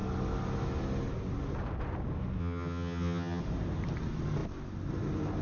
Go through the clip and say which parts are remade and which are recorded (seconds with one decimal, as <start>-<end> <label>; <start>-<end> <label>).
0.0-2.4 recorded; 2.4-3.4 remade; 3.4-5.4 recorded